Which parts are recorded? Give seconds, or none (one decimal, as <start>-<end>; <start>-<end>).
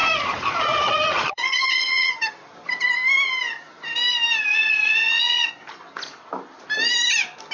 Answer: 2.1-4.5; 5.5-7.5